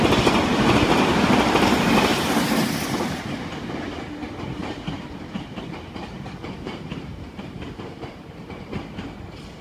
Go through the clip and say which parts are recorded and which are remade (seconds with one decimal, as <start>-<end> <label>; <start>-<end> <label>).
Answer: 0.0-4.6 recorded; 4.6-8.4 remade; 8.4-9.6 recorded